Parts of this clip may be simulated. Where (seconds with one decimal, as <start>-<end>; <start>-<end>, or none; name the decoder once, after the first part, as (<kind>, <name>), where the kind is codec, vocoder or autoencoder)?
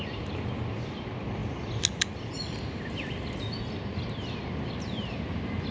none